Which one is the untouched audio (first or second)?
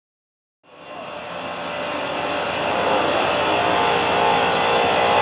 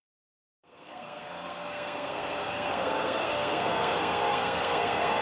first